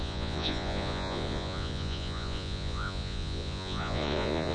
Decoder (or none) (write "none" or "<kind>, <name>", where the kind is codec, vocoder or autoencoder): vocoder, Vocos